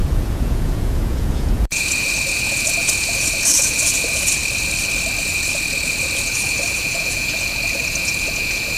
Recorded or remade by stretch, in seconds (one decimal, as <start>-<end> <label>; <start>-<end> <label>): 0.0-4.4 remade; 4.4-5.2 recorded; 5.2-8.8 remade